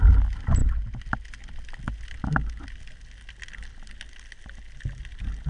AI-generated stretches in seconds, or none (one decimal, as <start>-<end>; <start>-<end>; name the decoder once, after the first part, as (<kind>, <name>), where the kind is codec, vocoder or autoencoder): none